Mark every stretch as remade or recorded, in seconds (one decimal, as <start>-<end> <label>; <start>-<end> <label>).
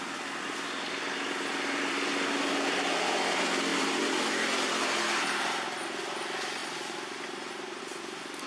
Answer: 0.0-3.7 recorded; 3.7-4.3 remade; 4.3-6.6 recorded; 6.6-7.8 remade; 7.8-8.5 recorded